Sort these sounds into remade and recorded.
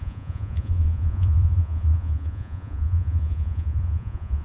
remade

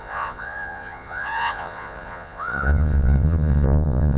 remade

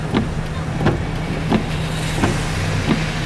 recorded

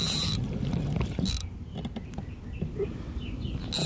recorded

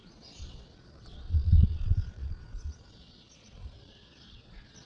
remade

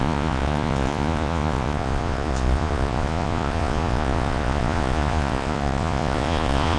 remade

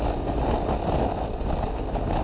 recorded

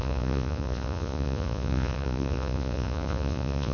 remade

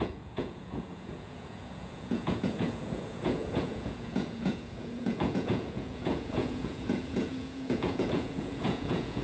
remade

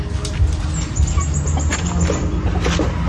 recorded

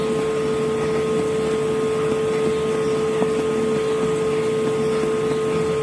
recorded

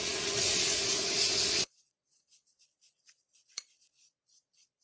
remade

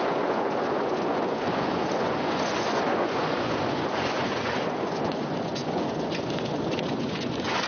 remade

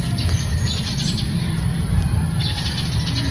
recorded